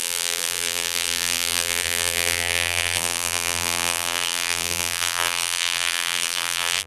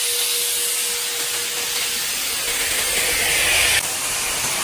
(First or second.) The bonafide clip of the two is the second